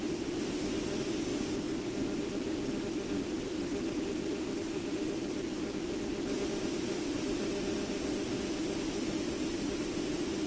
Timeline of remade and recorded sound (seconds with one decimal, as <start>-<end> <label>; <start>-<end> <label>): 0.0-10.5 recorded